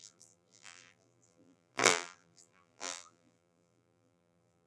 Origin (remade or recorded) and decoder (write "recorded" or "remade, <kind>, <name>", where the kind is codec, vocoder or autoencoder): remade, vocoder, BigVGAN v2